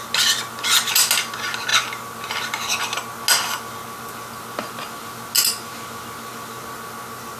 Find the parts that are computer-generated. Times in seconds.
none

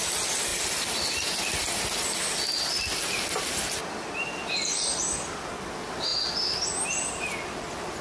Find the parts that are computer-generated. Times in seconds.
none